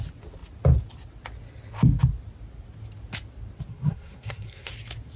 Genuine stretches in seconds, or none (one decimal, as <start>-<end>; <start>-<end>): 0.0-3.7; 4.7-5.2